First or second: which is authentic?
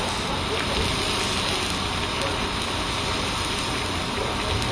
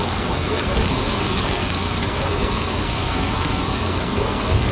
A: first